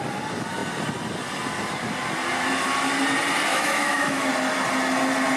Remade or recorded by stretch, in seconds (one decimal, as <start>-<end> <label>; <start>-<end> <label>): 0.0-3.5 recorded; 3.5-4.3 remade; 4.3-5.4 recorded